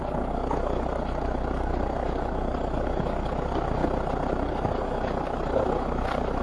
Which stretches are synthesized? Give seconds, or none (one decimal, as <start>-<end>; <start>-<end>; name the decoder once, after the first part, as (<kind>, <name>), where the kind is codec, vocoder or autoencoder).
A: 0.0-3.8 (codec, DAC); 4.4-6.4